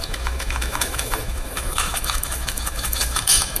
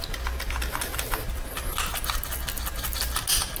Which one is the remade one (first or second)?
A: first